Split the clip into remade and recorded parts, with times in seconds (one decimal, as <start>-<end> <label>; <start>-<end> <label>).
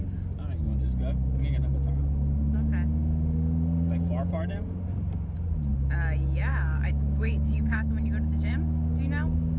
0.0-6.5 recorded; 6.5-7.9 remade; 7.9-9.6 recorded